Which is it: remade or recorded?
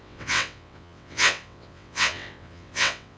remade